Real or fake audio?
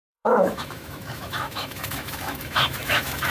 fake